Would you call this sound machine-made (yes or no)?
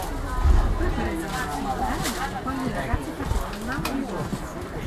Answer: no